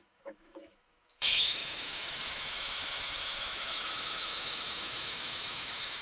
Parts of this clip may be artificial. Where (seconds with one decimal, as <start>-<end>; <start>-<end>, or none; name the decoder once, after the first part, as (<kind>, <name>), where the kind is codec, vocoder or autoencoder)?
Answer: 0.0-6.0 (autoencoder, DAC-VAE)